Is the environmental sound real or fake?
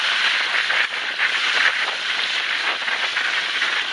fake